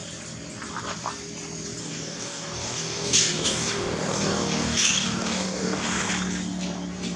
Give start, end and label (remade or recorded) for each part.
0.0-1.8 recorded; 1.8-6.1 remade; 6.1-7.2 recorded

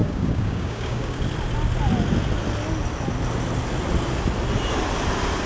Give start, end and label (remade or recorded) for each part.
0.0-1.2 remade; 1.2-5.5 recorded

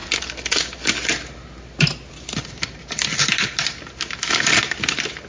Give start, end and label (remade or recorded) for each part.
0.0-5.3 recorded

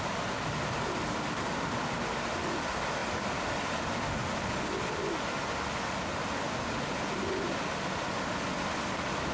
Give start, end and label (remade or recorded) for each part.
0.0-9.3 recorded